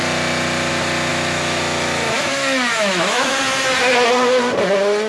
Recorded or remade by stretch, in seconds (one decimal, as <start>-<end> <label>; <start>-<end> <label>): 0.0-1.1 recorded; 1.1-3.4 remade; 3.4-5.1 recorded